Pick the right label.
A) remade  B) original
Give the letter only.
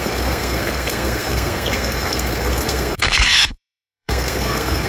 A